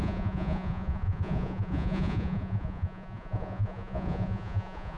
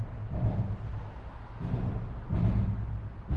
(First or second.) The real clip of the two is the second